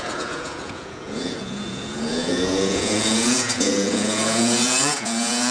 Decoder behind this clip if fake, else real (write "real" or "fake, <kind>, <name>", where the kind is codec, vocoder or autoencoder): fake, vocoder, Vocos